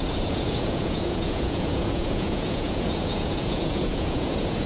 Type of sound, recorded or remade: remade